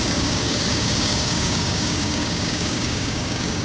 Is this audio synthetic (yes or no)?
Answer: yes